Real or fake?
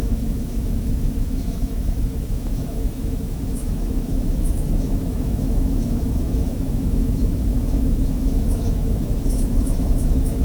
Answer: fake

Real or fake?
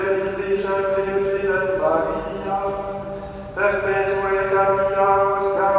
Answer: fake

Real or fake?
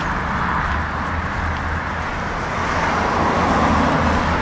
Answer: real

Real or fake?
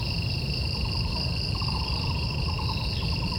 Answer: fake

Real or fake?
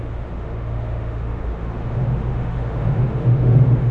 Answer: fake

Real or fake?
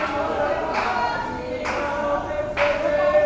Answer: real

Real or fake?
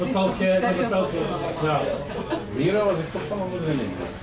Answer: real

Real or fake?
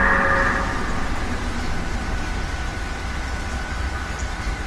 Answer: real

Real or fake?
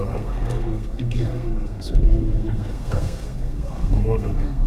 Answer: fake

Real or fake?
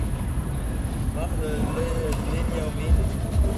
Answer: real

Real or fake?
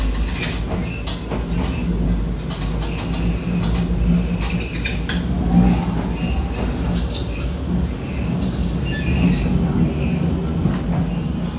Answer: real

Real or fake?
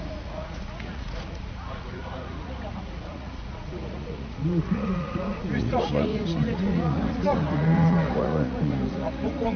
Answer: fake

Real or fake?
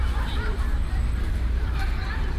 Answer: real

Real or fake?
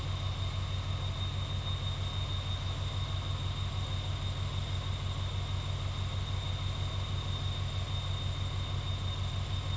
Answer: real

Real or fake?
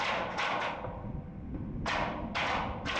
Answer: real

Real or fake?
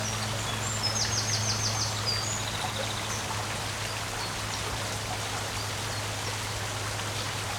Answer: real